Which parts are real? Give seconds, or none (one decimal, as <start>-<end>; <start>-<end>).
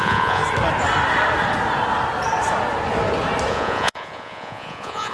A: 0.4-3.5